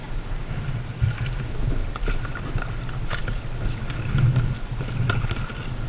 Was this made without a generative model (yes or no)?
yes